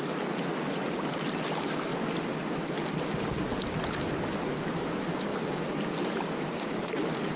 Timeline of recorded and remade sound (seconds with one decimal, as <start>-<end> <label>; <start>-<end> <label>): 0.0-7.4 recorded